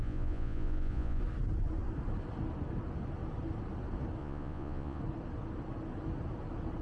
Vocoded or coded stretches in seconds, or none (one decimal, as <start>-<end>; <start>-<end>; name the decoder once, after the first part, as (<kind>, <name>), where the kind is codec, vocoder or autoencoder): 0.0-1.2 (vocoder, Vocos); 4.2-5.0